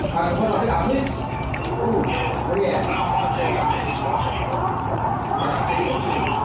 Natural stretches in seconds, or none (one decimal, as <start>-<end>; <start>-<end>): 0.0-4.7